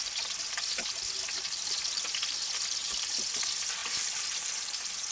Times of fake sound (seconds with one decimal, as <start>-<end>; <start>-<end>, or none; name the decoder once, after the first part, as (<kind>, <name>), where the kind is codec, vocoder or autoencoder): 2.8-3.3 (vocoder, BigVGAN v2)